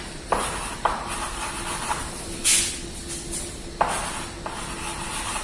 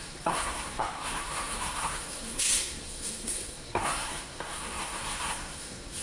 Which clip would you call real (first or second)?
first